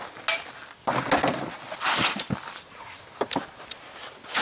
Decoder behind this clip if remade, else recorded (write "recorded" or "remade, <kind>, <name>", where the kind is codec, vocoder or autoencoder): recorded